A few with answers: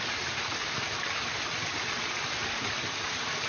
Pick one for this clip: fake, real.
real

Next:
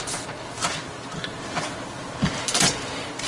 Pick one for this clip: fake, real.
real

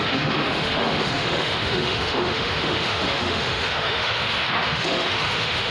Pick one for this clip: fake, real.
fake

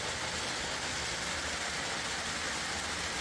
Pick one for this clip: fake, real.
real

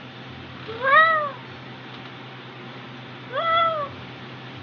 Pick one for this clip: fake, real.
real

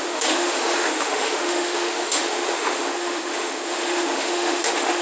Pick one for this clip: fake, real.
fake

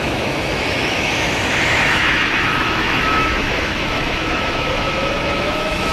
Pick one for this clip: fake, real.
fake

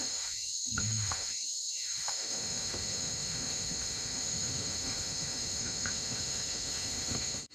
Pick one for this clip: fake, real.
fake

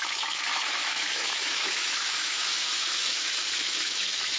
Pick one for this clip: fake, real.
fake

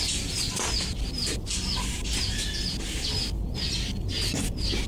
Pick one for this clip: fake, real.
real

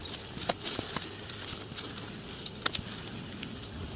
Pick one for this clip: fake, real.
real